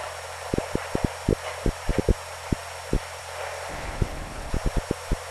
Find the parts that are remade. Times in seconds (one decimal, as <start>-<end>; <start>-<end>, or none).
3.7-4.5